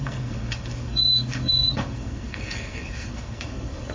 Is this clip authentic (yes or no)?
no